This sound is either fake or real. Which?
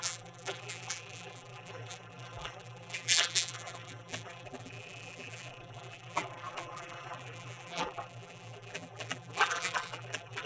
fake